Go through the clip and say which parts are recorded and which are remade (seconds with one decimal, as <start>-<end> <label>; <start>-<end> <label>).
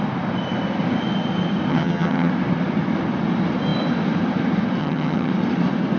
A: 0.0-1.7 recorded; 1.7-2.3 remade; 2.3-4.8 recorded; 4.8-5.3 remade; 5.3-6.0 recorded